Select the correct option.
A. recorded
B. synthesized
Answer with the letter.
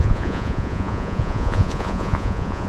B